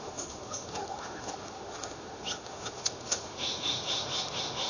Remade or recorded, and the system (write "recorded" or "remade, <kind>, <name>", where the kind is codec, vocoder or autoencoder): remade, autoencoder, DAC-VAE